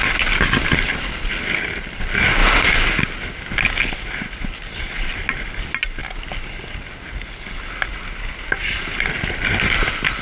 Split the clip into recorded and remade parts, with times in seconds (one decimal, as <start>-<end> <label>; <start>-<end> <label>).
0.0-10.2 recorded